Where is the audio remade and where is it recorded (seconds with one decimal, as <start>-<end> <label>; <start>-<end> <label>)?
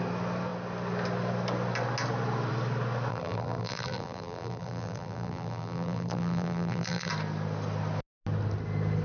0.0-3.1 recorded; 3.1-7.1 remade; 7.1-9.0 recorded